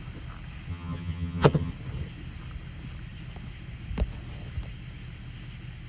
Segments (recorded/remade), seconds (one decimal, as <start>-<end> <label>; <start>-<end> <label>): 0.0-0.7 recorded; 0.7-1.7 remade; 1.7-5.9 recorded